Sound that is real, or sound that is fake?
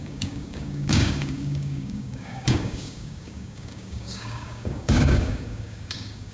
fake